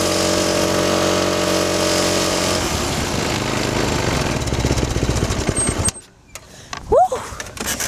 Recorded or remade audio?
recorded